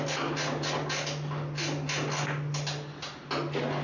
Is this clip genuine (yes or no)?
yes